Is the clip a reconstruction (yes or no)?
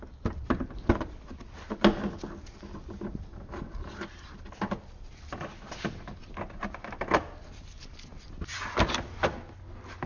no